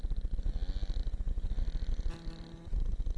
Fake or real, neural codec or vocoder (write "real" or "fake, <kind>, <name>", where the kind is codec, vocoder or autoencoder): real